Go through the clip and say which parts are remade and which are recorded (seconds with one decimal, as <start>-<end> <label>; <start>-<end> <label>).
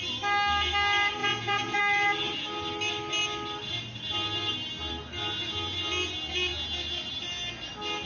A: 0.0-1.2 recorded; 1.2-1.8 remade; 1.8-8.1 recorded